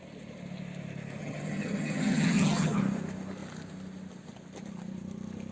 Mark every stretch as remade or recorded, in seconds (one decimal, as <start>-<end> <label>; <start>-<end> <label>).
0.0-1.2 recorded; 1.2-2.8 remade; 2.8-5.5 recorded